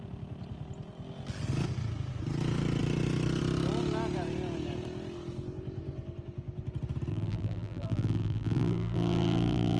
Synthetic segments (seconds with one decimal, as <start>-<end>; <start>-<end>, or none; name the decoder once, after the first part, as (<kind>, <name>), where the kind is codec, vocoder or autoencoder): 7.1-9.8 (vocoder, BigVGAN v2)